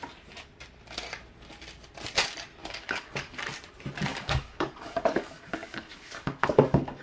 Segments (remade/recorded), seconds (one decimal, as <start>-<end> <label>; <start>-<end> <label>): 0.0-2.6 recorded; 2.6-3.4 remade; 3.4-4.1 recorded; 4.1-7.0 remade